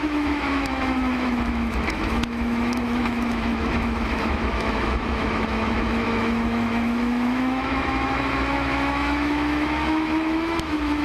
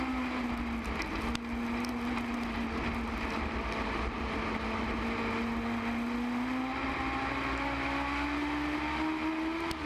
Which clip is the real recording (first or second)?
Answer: second